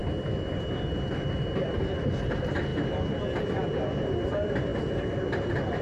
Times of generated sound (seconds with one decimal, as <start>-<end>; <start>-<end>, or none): none